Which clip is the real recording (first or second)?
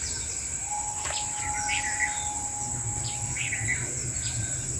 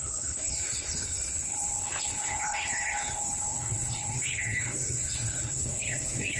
first